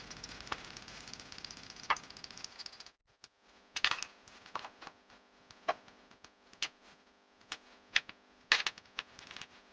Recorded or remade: recorded